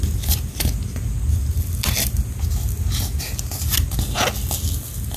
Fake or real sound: real